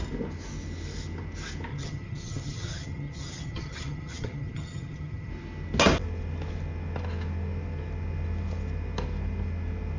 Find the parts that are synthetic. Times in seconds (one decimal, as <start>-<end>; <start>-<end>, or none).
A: 1.7-5.3